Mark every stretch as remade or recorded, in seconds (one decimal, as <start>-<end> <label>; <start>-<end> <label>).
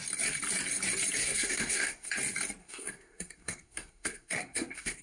0.0-1.2 recorded; 1.2-2.1 remade; 2.1-2.6 recorded; 2.6-5.0 remade